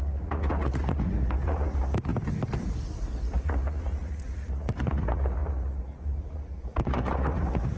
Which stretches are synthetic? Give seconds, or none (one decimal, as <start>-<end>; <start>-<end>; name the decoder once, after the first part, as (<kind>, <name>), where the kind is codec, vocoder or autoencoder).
0.0-2.1 (vocoder, Vocos); 3.4-7.8